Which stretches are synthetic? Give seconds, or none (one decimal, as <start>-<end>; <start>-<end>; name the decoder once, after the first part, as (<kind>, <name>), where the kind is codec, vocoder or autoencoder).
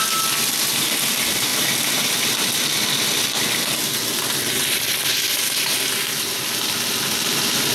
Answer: none